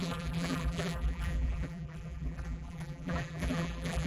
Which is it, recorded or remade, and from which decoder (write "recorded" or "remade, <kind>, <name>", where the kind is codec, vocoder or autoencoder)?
remade, vocoder, BigVGAN v2